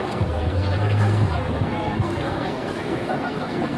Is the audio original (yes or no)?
no